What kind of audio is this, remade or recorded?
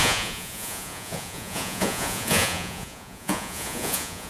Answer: remade